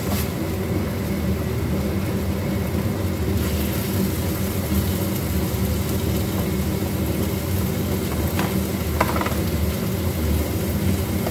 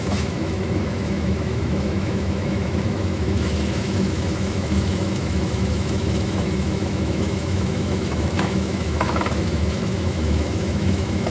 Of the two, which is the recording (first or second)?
first